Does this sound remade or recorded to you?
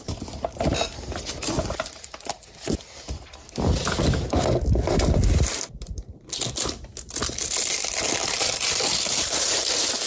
recorded